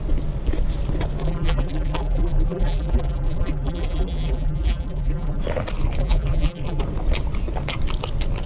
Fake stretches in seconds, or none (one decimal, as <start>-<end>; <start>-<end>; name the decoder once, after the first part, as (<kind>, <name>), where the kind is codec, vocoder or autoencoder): 1.2-5.4 (vocoder, BigVGAN v2); 6.0-6.8